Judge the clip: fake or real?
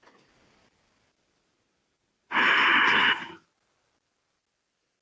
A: real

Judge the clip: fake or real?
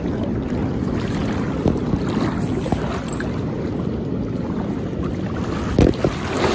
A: real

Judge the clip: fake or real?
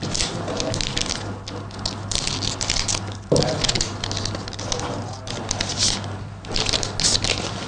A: real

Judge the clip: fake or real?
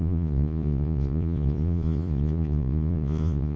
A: fake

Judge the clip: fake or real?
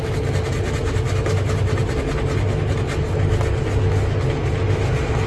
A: real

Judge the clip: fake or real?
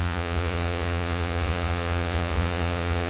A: fake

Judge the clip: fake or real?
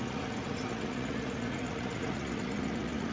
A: fake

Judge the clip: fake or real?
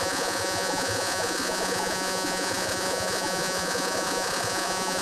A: fake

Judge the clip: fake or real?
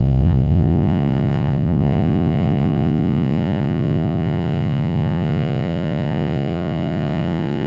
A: fake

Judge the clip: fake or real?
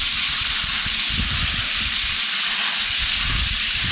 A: real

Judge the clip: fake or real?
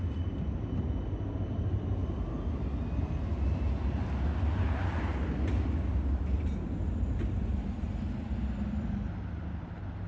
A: real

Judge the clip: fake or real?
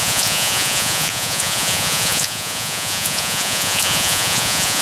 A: fake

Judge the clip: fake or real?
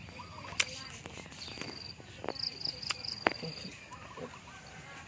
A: real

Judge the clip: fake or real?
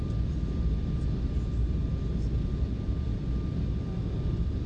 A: real